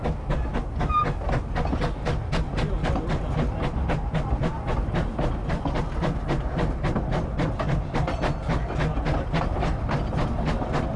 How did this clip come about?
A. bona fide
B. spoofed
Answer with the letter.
A